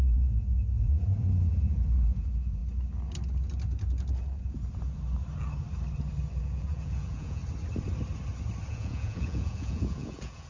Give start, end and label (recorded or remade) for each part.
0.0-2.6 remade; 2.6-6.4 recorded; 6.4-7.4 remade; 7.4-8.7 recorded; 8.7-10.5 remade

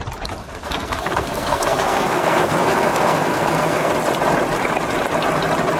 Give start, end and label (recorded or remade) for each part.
0.0-0.4 recorded; 0.4-3.9 remade; 3.9-5.8 recorded

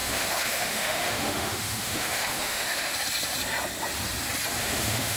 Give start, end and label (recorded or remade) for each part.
0.0-2.9 remade; 2.9-4.6 recorded; 4.6-5.2 remade